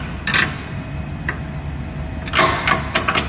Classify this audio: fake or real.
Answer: real